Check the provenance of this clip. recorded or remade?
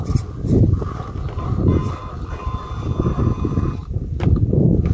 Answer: recorded